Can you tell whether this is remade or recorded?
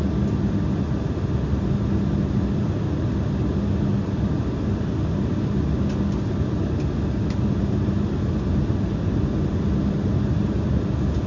recorded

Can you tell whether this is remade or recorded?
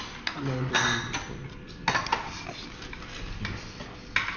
recorded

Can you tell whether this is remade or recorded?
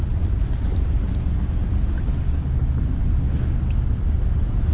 recorded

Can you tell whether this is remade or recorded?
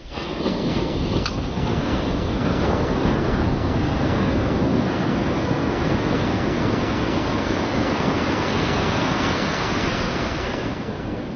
remade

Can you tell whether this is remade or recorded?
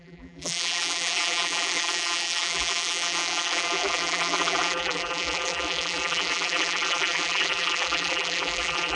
remade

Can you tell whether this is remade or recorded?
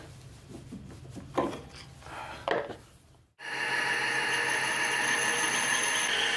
recorded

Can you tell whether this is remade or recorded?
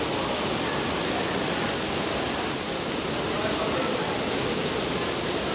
recorded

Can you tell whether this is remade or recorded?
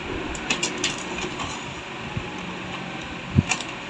recorded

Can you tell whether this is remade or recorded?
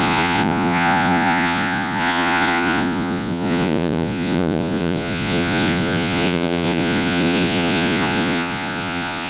remade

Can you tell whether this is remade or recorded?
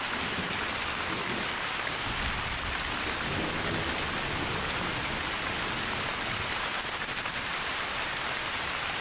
recorded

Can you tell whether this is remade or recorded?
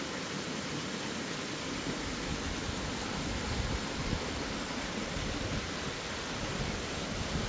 recorded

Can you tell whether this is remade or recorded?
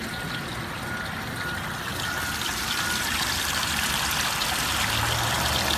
recorded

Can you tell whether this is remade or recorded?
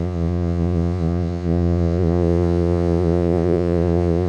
remade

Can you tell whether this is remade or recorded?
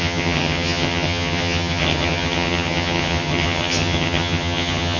remade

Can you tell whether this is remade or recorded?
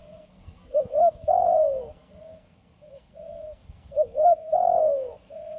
remade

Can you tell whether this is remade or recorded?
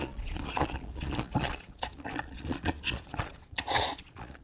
remade